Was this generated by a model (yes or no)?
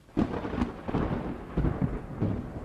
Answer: no